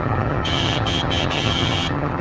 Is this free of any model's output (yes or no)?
no